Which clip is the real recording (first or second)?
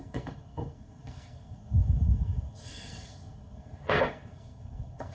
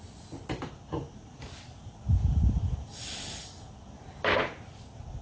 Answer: second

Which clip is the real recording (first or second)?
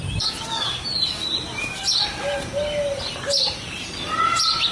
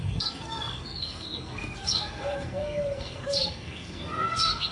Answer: first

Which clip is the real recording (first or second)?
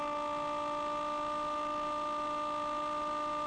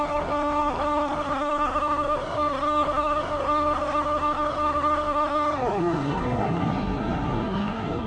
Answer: first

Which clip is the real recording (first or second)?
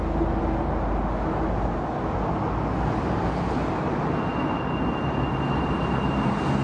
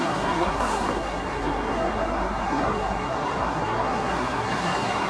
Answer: first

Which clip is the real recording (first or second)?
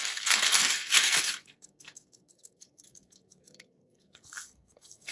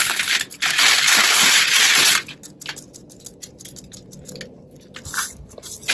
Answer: second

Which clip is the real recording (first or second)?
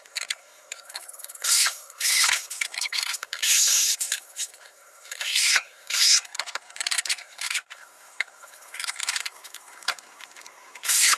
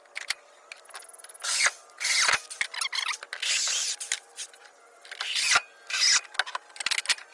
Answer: second